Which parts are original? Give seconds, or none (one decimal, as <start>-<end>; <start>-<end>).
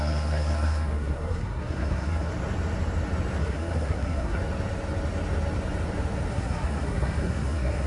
2.3-3.4; 4.4-6.3